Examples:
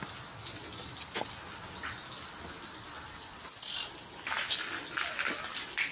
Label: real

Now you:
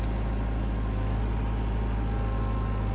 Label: real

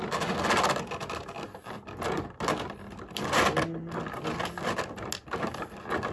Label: real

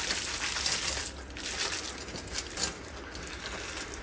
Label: real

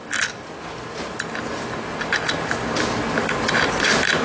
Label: real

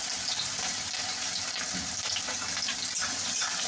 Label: real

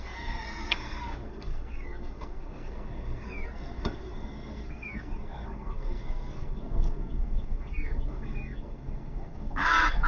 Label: fake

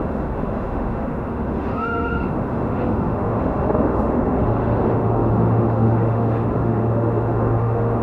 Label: fake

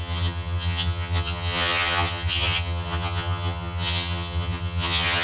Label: fake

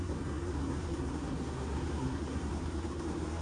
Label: fake